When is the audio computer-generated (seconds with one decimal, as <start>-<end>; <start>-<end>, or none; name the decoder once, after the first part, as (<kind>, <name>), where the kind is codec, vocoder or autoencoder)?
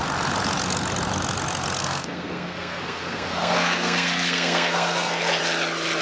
1.8-5.4 (codec, SNAC)